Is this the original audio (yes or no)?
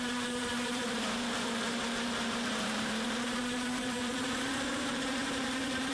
no